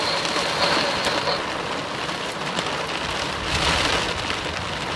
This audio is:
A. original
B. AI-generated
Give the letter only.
A